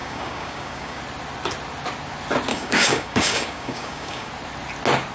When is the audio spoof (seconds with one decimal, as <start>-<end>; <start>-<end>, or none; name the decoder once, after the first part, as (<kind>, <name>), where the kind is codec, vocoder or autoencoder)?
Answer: 0.0-1.0 (codec, DAC); 2.5-4.3